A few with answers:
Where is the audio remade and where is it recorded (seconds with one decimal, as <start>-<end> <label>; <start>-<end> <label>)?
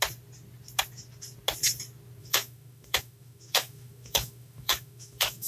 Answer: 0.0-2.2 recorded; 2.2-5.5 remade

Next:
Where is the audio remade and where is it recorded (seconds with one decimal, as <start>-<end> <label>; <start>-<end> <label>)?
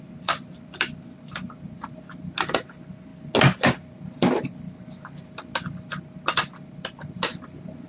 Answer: 0.0-7.9 recorded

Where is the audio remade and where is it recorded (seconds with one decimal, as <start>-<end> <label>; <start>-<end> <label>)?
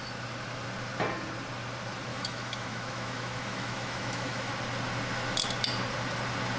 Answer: 0.0-2.1 recorded; 2.1-4.5 remade; 4.5-6.6 recorded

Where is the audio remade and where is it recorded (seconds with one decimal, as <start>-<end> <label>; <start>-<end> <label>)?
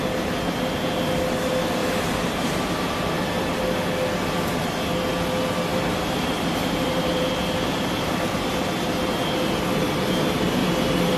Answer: 0.0-1.8 recorded; 1.8-3.6 remade; 3.6-5.7 recorded; 5.7-7.3 remade; 7.3-10.6 recorded; 10.6-11.2 remade